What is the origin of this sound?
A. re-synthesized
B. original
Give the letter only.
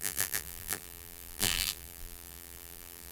A